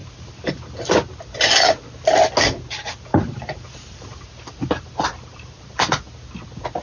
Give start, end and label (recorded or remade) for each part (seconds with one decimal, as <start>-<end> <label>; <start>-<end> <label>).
0.0-0.5 remade; 0.5-3.1 recorded; 3.1-6.1 remade; 6.1-6.8 recorded